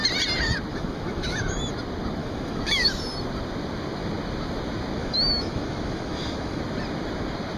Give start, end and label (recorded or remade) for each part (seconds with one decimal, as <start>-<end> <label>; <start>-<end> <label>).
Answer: 0.0-0.7 recorded; 0.7-1.7 remade; 1.7-2.2 recorded; 2.2-3.0 remade; 3.0-5.0 recorded; 5.0-6.6 remade; 6.6-7.6 recorded